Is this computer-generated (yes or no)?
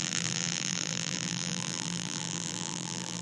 yes